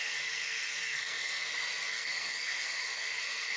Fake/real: fake